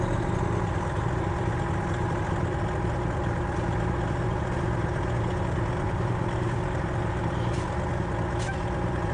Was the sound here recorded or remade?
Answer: recorded